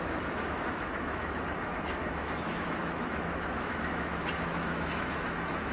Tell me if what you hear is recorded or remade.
remade